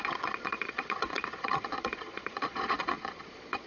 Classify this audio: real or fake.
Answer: fake